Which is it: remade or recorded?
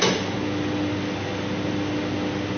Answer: recorded